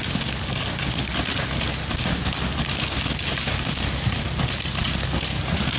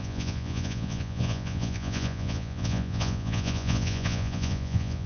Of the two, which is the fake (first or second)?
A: second